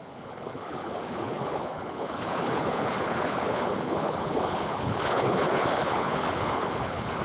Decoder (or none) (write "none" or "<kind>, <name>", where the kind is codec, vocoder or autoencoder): codec, HILCodec